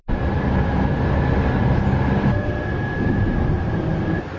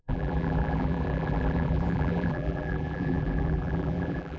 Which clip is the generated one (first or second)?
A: second